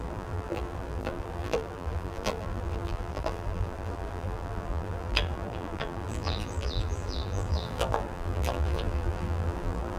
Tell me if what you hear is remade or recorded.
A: remade